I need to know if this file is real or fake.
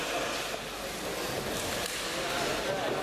real